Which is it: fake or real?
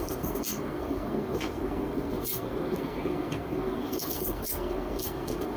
fake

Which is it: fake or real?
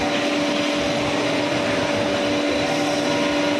real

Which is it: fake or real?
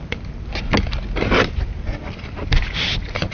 real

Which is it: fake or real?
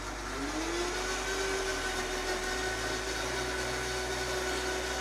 real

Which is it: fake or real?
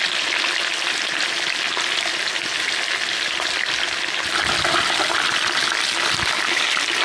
real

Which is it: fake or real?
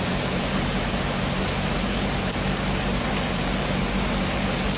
fake